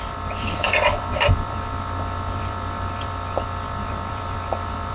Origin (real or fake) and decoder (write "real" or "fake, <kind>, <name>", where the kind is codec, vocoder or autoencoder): fake, vocoder, BigVGAN v2